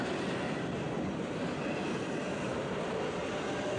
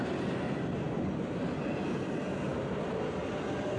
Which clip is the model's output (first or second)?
first